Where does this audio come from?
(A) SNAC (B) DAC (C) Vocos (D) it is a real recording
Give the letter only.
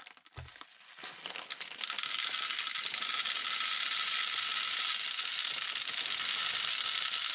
D